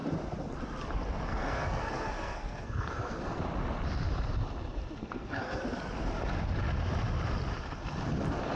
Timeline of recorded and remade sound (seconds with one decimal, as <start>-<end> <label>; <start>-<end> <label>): 0.0-1.3 recorded; 1.3-3.4 remade; 3.4-5.0 recorded; 5.0-5.6 remade; 5.6-8.6 recorded